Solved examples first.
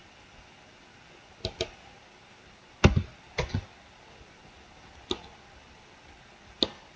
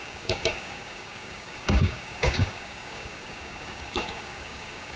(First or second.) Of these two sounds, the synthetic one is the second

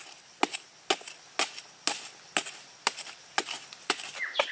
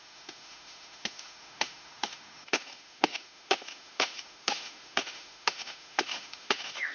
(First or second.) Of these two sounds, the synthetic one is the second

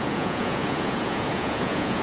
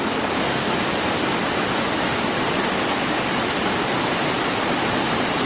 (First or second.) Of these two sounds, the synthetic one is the first